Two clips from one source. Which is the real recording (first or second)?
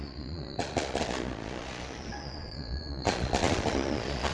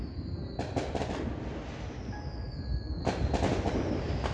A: second